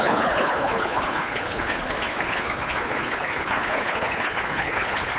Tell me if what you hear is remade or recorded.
remade